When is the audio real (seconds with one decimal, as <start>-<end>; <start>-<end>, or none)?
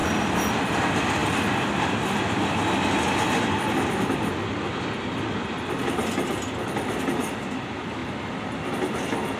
0.0-9.4